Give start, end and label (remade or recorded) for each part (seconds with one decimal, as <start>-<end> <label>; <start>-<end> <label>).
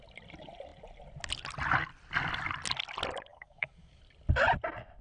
0.0-3.3 recorded; 3.3-4.0 remade; 4.0-5.0 recorded